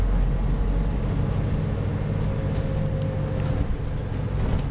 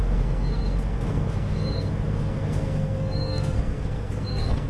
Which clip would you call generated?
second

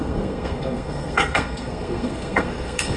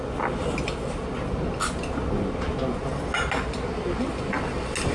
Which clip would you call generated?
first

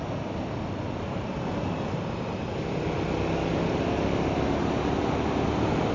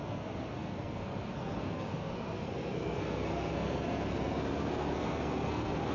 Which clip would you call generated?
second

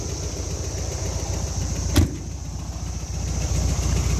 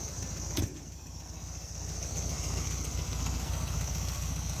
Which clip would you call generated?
second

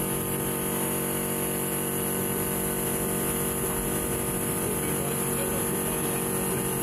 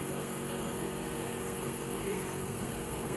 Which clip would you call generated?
second